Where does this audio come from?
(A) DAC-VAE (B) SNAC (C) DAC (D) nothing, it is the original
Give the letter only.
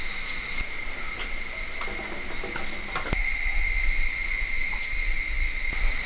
D